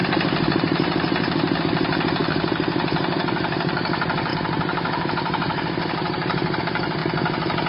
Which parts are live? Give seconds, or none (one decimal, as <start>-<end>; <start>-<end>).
7.0-7.7